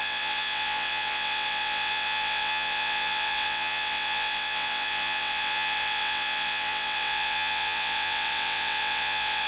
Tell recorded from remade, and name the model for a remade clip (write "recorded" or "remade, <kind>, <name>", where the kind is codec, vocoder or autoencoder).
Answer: remade, vocoder, WaveNeXt